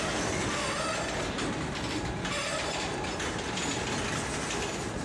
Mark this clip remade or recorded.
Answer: recorded